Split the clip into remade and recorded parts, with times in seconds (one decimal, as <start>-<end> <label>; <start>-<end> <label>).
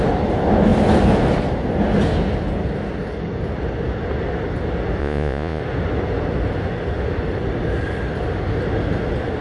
0.0-5.0 recorded; 5.0-5.6 remade; 5.6-9.4 recorded